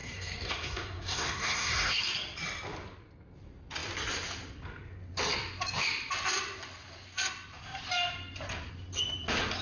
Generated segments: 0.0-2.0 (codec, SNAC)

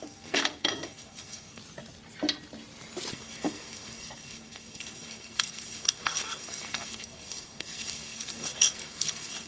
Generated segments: 0.0-1.6 (codec, SNAC); 3.1-9.5

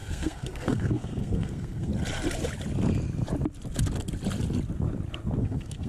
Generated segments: 0.0-1.9 (codec, SNAC); 5.4-5.9

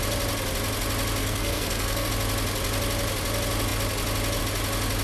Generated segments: 1.2-2.1 (codec, SNAC)

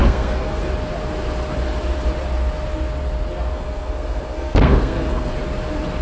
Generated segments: 0.0-0.6 (codec, SNAC); 3.5-5.3